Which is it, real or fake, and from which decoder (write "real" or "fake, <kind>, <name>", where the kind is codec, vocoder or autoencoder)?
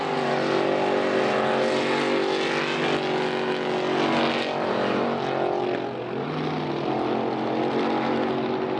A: real